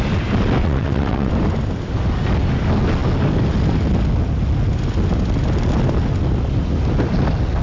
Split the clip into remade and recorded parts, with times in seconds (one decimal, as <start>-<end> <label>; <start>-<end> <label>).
0.0-0.6 recorded; 0.6-1.3 remade; 1.3-7.6 recorded